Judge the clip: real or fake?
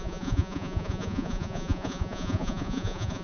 fake